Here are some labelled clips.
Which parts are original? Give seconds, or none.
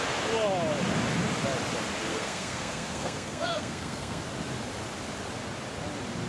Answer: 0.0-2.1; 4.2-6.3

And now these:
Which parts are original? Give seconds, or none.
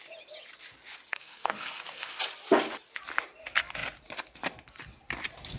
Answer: 0.0-1.1; 2.2-5.6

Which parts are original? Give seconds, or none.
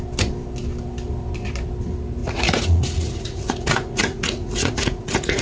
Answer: 0.0-2.2